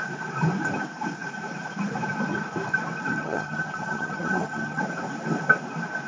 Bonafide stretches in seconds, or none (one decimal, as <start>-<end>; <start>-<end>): 0.0-3.1; 4.8-6.1